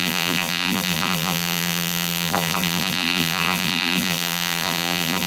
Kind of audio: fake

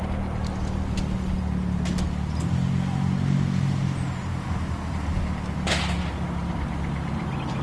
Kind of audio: real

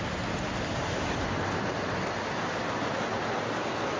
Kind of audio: real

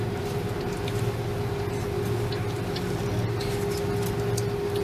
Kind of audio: real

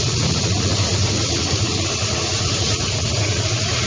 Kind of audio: fake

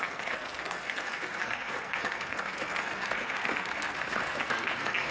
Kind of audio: fake